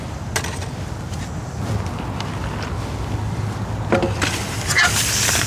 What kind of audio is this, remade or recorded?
recorded